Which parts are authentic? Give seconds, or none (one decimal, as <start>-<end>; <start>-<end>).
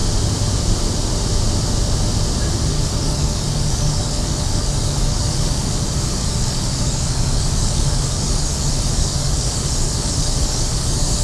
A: 0.0-2.7